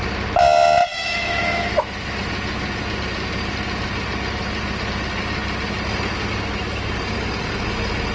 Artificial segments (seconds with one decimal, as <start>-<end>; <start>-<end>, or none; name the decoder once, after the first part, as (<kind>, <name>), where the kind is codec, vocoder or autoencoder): 0.9-2.3 (autoencoder, DAC-VAE)